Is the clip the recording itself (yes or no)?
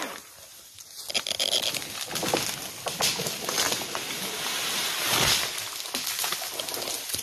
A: yes